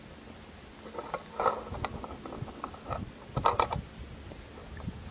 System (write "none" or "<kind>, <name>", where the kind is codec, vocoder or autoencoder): none